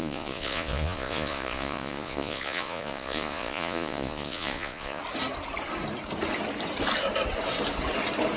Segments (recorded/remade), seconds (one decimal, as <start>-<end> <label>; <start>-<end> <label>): 0.0-5.0 remade; 5.0-8.4 recorded

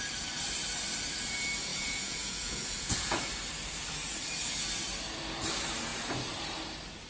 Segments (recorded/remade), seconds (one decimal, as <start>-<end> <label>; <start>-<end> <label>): 0.0-1.7 recorded; 1.7-3.2 remade; 3.2-7.1 recorded